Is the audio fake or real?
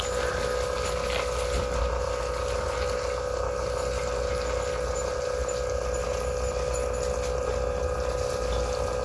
real